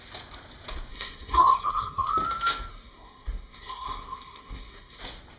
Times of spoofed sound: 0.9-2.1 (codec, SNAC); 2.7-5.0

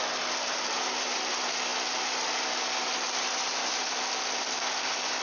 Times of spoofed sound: none